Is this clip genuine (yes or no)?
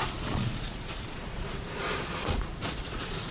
no